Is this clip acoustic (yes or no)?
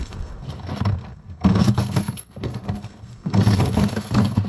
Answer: no